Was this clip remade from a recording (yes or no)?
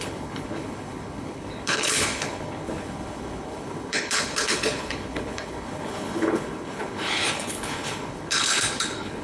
yes